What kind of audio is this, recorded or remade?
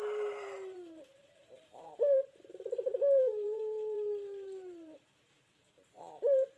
remade